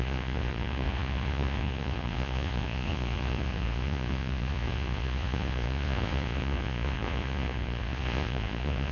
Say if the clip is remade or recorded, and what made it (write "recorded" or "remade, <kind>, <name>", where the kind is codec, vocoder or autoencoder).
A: remade, vocoder, Vocos